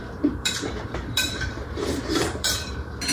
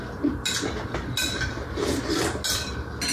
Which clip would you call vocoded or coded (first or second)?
first